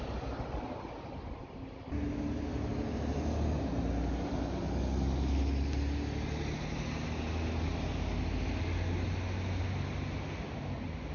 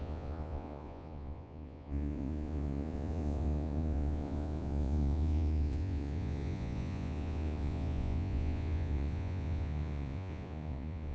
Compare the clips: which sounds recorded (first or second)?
first